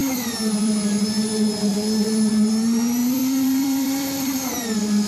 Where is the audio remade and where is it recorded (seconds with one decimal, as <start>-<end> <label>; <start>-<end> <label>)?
0.0-0.7 remade; 0.7-1.7 recorded; 1.7-2.3 remade; 2.3-3.0 recorded; 3.0-4.5 remade; 4.5-5.1 recorded